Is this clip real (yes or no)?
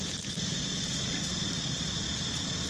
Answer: yes